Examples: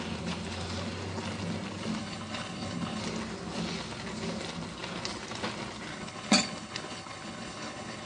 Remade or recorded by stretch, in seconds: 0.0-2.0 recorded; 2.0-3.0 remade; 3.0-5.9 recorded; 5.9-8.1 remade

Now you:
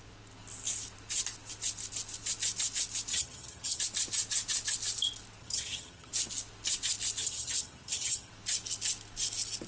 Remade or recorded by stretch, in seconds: 0.0-3.1 recorded; 3.1-3.8 remade; 3.8-5.4 recorded; 5.4-6.1 remade; 6.1-7.2 recorded; 7.2-8.3 remade; 8.3-9.7 recorded

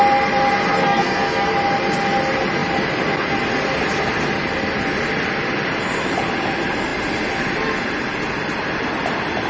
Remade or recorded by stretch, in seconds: 0.0-0.8 recorded; 0.8-1.5 remade; 1.5-9.5 recorded

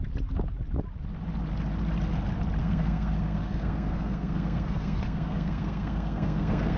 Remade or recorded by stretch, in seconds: 0.0-2.6 recorded; 2.6-6.8 remade

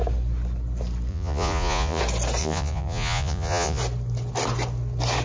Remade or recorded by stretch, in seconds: 0.0-1.1 recorded; 1.1-2.0 remade; 2.0-2.4 recorded; 2.4-3.8 remade; 3.8-5.2 recorded

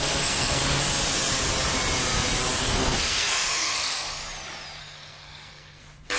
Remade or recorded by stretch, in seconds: 0.0-0.6 remade; 0.6-2.6 recorded; 2.6-4.2 remade; 4.2-4.8 recorded; 4.8-6.2 remade

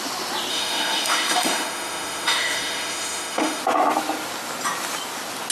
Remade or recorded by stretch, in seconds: 0.0-0.5 recorded; 0.5-3.6 remade; 3.6-5.5 recorded

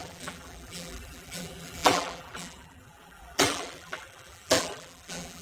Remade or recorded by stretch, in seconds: 0.0-5.4 remade